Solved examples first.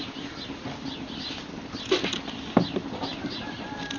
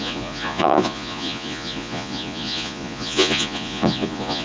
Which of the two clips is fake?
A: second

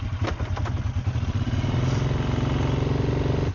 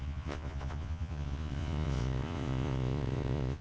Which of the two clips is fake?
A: second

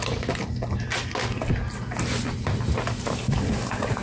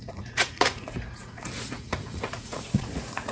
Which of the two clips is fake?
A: second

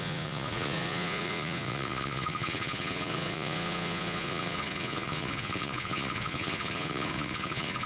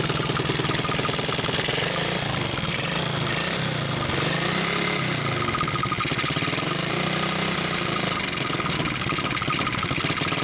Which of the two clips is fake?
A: first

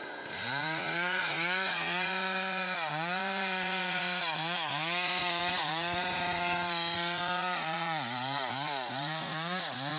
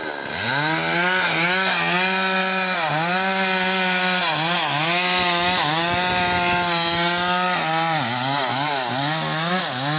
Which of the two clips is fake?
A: first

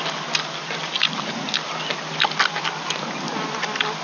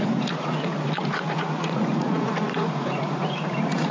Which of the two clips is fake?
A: second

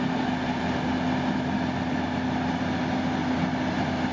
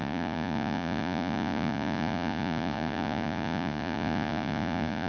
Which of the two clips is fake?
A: second